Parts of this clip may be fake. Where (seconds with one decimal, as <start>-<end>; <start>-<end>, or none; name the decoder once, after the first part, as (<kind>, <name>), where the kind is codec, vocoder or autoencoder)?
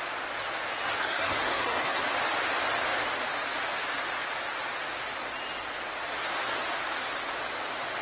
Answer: 1.0-2.0 (codec, SNAC)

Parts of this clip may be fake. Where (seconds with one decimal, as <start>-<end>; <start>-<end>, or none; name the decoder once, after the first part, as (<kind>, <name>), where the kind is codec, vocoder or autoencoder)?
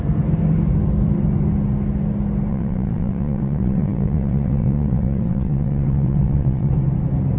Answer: 2.5-6.7 (vocoder, WaveNeXt)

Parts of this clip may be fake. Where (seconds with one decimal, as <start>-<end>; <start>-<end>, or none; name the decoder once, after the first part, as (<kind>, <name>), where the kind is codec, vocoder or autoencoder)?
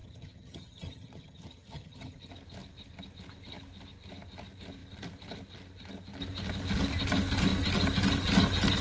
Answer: 0.0-2.3 (vocoder, HiFi-GAN)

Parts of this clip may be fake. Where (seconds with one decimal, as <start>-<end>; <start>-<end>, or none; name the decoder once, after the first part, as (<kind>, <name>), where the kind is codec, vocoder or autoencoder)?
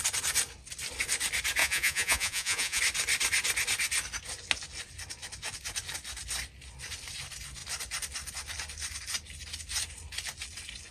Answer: 1.6-2.8 (vocoder, Vocos)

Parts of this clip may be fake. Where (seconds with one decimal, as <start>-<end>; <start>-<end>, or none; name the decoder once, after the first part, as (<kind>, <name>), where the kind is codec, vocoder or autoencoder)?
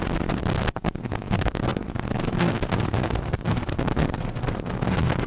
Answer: 0.0-0.4 (codec, SNAC); 1.0-5.3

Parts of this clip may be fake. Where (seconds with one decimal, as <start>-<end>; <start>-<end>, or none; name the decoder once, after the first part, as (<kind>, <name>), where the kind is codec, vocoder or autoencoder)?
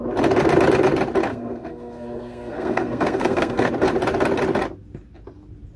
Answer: 1.3-3.7 (codec, SNAC)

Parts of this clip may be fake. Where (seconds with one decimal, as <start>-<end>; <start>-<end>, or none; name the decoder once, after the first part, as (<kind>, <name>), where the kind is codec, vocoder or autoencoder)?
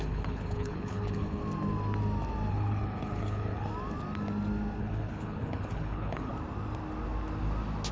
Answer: 0.0-1.4 (codec, HILCodec); 2.5-3.7; 4.8-6.3